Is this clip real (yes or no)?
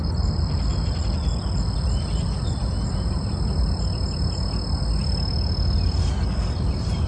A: yes